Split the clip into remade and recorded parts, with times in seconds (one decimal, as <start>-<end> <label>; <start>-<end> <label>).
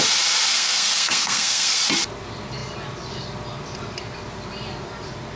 0.0-0.5 recorded; 0.5-1.8 remade; 1.8-5.4 recorded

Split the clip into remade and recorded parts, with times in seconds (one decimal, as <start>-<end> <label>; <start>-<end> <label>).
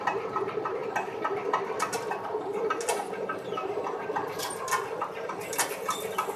0.0-6.4 recorded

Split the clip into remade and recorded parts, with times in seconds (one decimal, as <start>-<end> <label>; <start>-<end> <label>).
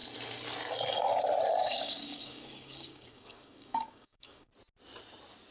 0.0-1.6 recorded; 1.6-4.5 remade; 4.5-5.5 recorded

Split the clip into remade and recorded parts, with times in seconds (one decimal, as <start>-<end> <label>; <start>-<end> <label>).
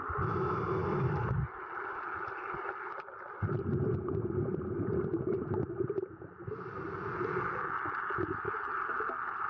0.0-0.8 recorded; 0.8-2.4 remade; 2.4-9.5 recorded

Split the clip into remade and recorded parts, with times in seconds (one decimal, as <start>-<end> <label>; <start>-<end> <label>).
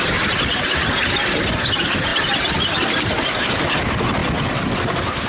0.0-5.3 recorded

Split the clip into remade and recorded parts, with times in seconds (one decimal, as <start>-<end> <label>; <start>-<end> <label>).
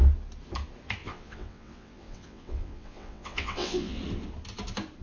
0.0-1.0 recorded; 1.0-4.0 remade; 4.0-5.0 recorded